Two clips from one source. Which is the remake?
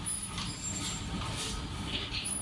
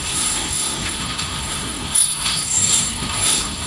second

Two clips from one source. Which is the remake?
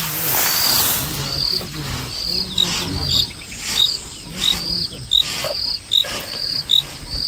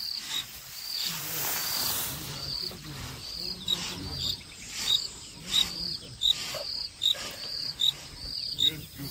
second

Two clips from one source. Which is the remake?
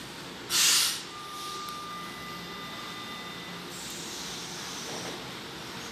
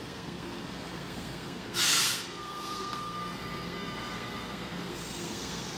second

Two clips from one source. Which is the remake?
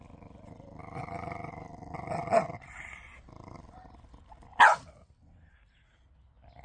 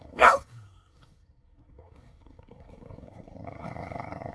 second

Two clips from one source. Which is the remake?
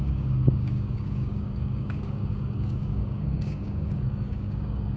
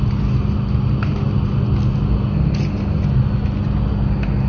first